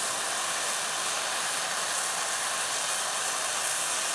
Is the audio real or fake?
real